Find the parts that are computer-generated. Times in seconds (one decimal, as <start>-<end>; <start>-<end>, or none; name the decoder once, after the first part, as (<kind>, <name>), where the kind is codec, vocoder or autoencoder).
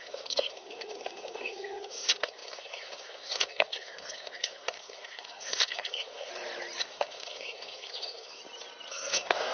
0.0-6.3 (codec, SNAC); 6.8-8.4; 8.9-9.5